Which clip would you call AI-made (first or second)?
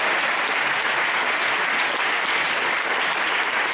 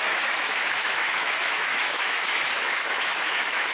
second